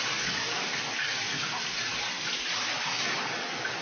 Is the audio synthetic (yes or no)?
no